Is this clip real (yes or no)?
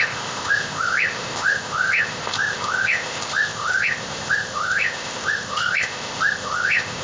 no